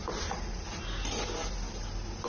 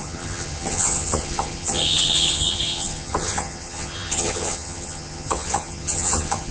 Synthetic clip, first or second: second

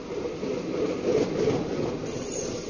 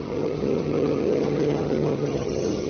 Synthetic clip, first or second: second